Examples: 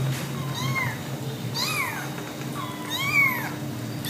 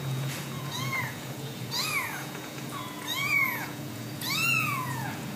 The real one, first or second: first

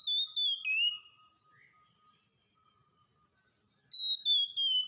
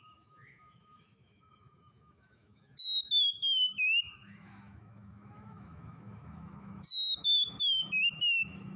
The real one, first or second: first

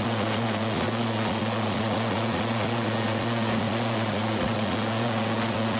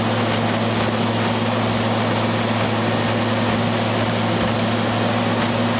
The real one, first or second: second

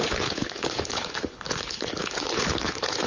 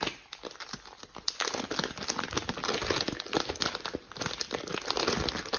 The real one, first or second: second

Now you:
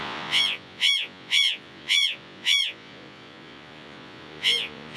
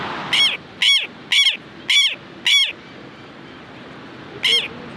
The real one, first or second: second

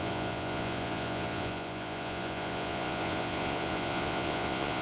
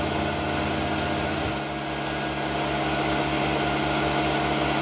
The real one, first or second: second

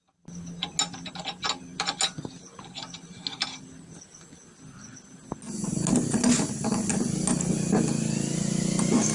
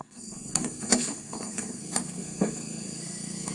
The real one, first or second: first